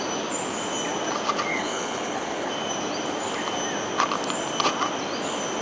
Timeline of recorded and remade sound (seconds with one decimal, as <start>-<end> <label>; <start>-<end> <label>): 0.0-1.5 recorded; 1.5-2.5 remade; 2.5-5.6 recorded